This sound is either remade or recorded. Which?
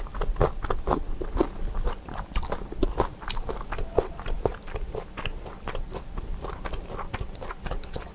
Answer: recorded